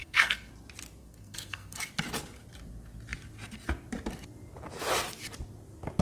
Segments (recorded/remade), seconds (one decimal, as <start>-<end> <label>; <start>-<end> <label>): 0.0-0.5 remade; 0.5-1.0 recorded; 1.0-1.9 remade; 1.9-6.0 recorded